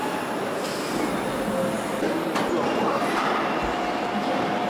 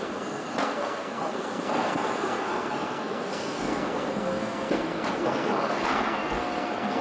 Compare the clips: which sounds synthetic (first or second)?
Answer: second